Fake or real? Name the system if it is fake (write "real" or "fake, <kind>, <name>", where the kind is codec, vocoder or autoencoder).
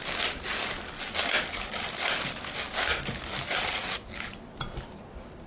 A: real